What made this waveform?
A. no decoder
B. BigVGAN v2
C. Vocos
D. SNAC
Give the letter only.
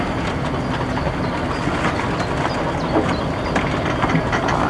A